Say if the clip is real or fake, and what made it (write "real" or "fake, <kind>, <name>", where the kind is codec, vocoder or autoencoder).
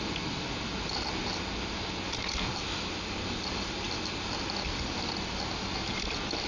real